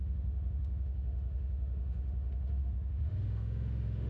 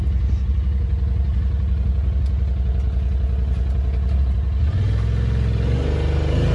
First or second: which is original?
second